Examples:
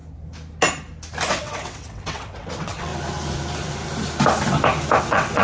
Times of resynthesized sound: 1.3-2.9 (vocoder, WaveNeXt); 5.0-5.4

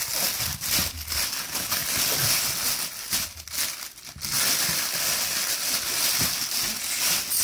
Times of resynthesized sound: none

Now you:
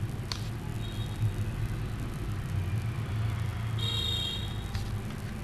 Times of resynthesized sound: none

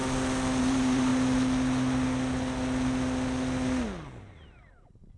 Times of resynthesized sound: 0.6-1.1 (vocoder, BigVGAN v2); 4.2-5.2